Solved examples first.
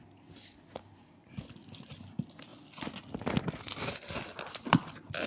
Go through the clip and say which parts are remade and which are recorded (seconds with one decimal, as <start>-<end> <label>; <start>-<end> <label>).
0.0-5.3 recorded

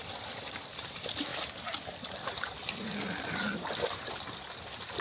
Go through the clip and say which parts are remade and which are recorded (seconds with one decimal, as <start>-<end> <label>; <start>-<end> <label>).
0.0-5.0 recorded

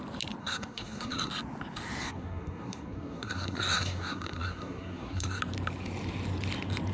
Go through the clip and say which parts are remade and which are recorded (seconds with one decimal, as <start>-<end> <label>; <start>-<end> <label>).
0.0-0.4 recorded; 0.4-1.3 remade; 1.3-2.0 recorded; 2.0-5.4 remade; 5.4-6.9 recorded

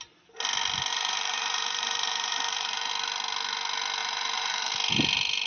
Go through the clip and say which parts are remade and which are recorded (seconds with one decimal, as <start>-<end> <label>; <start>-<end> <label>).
0.0-0.9 recorded; 0.9-2.9 remade; 2.9-4.0 recorded; 4.0-4.7 remade; 4.7-5.5 recorded

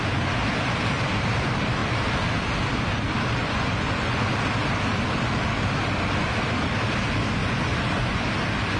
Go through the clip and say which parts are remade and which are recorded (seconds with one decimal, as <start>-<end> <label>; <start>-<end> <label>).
0.0-3.4 recorded; 3.4-4.3 remade; 4.3-7.4 recorded; 7.4-8.2 remade; 8.2-8.8 recorded